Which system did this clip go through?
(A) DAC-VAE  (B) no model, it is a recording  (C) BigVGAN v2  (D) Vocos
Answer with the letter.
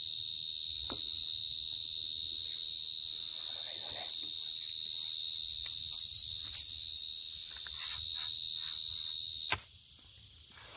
C